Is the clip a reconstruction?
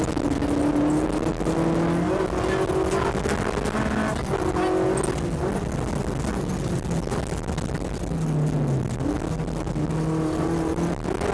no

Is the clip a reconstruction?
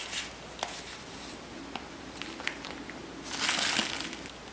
no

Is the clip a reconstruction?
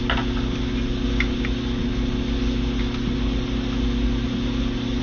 no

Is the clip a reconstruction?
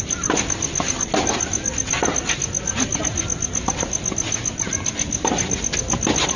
no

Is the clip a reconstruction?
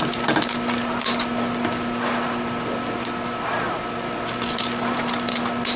no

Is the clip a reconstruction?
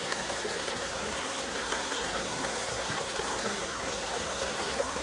yes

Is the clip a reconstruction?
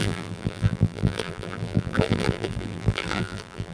yes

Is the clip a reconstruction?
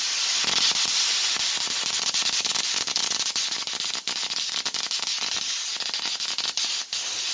no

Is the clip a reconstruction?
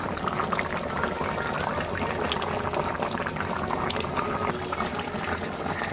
no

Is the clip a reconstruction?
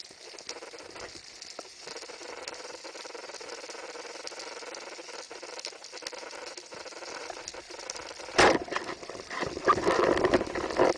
no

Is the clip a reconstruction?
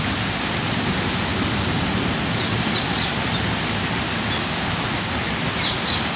no